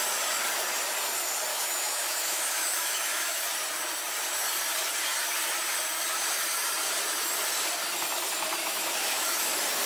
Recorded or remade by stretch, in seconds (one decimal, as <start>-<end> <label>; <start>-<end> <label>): 0.0-1.5 recorded; 1.5-3.5 remade; 3.5-8.6 recorded; 8.6-9.5 remade; 9.5-9.9 recorded